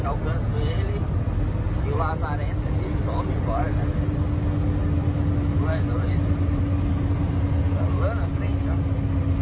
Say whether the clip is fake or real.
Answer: real